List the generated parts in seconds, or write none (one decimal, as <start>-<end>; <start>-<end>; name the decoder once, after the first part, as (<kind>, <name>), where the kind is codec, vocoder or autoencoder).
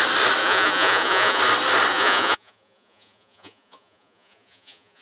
0.4-1.4 (vocoder, Vocos); 1.9-5.0